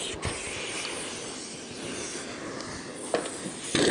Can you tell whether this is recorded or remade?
recorded